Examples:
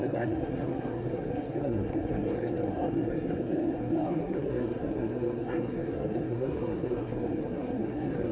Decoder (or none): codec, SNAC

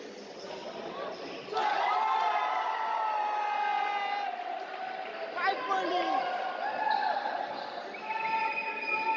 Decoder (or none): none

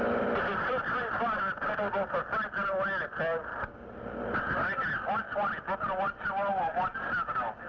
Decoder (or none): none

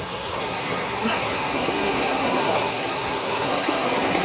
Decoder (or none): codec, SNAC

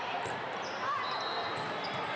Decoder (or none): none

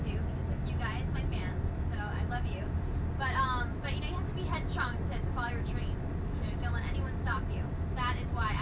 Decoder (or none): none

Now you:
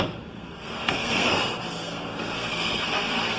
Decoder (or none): codec, SNAC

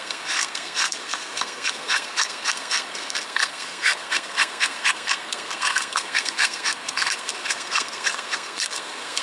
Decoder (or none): codec, SNAC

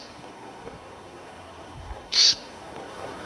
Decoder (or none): codec, SNAC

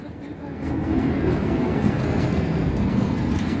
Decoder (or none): codec, SNAC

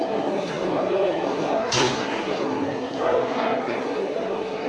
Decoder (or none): codec, SNAC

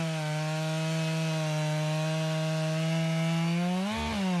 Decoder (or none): none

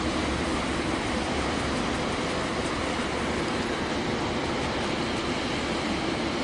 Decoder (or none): none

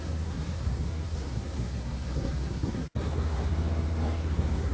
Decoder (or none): codec, SNAC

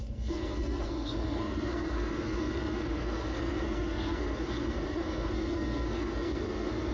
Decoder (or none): codec, SNAC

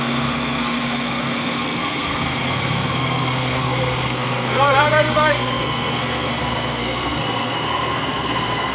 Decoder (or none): codec, SNAC